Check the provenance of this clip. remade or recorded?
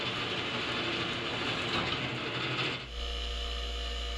recorded